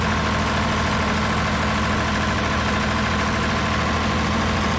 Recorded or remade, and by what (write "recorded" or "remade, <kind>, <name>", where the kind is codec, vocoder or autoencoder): recorded